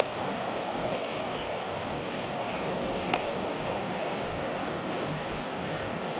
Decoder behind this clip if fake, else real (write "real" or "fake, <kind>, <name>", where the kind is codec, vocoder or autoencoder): fake, codec, DAC